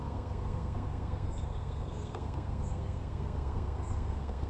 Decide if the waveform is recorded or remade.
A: remade